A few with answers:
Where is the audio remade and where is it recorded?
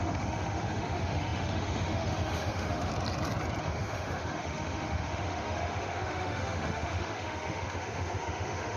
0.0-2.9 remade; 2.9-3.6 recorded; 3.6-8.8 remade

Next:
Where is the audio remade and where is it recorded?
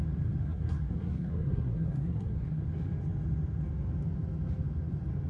0.0-0.4 recorded; 0.4-2.6 remade; 2.6-5.3 recorded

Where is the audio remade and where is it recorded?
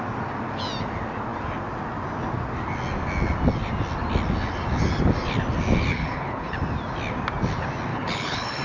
0.0-5.9 recorded; 5.9-6.5 remade; 6.5-7.9 recorded; 7.9-8.6 remade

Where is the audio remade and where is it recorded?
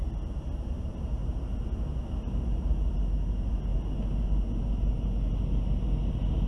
0.0-6.5 recorded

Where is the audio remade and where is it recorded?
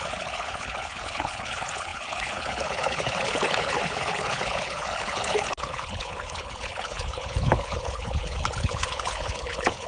0.0-9.9 remade